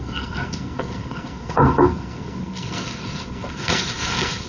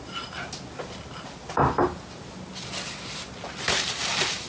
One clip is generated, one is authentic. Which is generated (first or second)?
first